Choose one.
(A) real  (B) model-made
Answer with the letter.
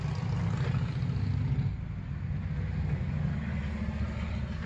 A